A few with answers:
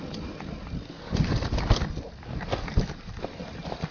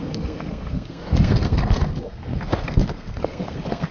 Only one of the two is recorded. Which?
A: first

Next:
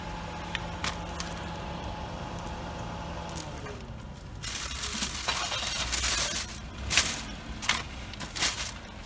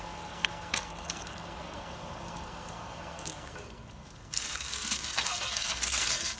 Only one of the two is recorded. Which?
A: first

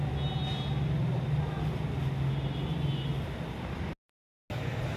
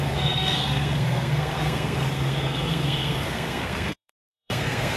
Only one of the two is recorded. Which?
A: first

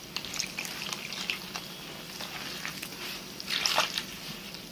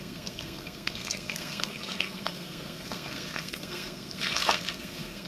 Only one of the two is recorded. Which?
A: first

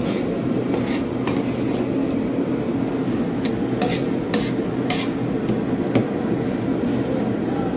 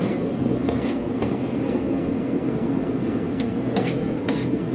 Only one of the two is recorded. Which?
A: first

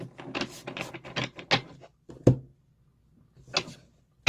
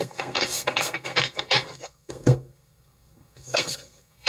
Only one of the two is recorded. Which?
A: first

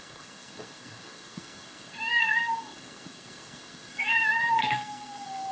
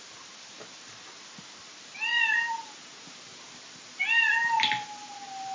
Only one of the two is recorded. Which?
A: second